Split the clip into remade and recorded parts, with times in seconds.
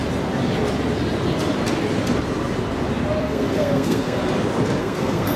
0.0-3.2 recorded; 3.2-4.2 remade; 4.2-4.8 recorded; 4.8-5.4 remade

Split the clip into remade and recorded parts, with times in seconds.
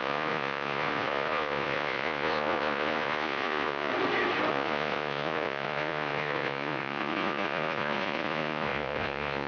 0.0-3.9 remade; 3.9-4.5 recorded; 4.5-9.5 remade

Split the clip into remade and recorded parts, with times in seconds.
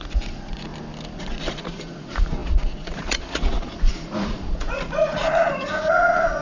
0.0-0.7 remade; 0.7-1.2 recorded; 1.2-6.4 remade